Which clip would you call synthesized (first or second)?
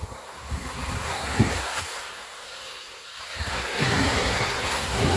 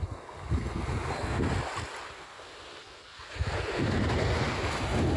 first